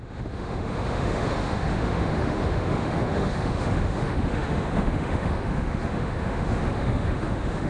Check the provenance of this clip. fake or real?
fake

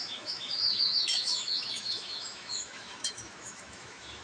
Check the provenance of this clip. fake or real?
fake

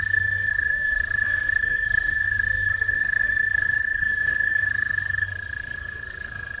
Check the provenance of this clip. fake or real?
fake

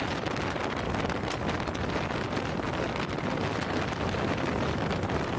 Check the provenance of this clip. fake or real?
real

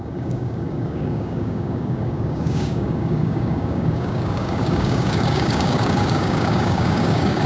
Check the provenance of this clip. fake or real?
fake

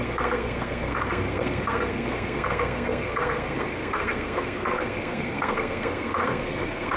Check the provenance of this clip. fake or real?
fake